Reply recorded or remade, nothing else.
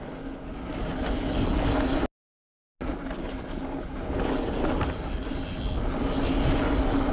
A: recorded